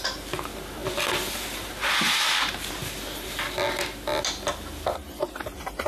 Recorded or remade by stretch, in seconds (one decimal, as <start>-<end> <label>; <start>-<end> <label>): 0.0-5.9 recorded